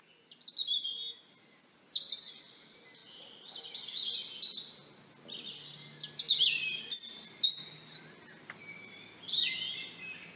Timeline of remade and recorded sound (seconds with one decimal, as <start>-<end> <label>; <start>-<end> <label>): 0.0-10.4 recorded